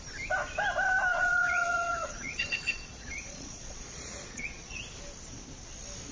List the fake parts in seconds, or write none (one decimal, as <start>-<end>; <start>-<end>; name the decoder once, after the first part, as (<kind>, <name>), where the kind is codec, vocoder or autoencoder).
1.1-4.8 (vocoder, Vocos)